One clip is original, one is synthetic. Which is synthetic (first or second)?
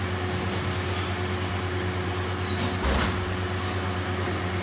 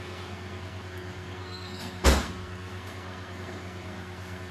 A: second